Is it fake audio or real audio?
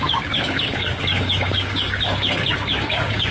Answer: fake